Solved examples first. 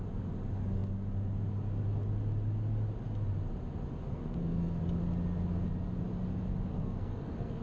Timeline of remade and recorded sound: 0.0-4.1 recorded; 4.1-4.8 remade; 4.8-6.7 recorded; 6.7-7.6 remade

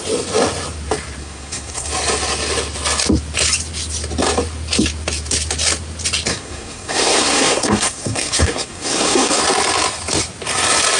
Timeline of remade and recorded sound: 0.0-1.2 recorded; 1.2-1.9 remade; 1.9-6.3 recorded; 6.3-9.4 remade; 9.4-11.0 recorded